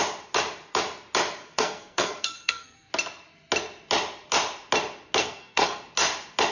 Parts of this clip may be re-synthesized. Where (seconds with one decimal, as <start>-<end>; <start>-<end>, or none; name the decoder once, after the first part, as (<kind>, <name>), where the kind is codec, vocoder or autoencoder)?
1.4-2.9 (codec, SNAC); 5.2-5.8

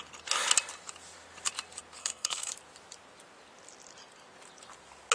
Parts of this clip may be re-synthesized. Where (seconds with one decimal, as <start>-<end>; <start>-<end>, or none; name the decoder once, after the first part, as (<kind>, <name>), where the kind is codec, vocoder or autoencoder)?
2.0-2.5 (codec, SNAC)

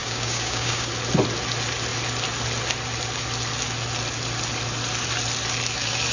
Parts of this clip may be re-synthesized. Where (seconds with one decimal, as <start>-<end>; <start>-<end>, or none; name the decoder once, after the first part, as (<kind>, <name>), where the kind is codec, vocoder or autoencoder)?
0.0-0.9 (codec, DAC)

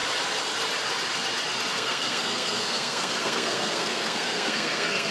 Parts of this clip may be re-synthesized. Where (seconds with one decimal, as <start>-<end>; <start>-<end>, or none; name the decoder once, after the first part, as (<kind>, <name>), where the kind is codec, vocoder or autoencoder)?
1.7-5.1 (codec, SNAC)

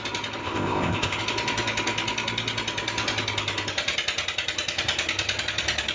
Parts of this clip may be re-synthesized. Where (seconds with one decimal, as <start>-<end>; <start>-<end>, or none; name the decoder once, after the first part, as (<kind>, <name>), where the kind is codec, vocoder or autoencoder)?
0.4-1.2 (codec, ZipCodec)

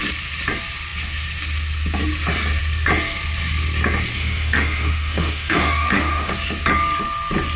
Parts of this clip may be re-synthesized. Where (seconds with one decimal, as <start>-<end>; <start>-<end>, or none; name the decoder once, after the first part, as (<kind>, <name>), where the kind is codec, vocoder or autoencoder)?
4.2-6.3 (autoencoder, DAC-VAE)

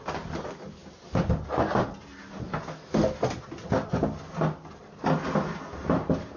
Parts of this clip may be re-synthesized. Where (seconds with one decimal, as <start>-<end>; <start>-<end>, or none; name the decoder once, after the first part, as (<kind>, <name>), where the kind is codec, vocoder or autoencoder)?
none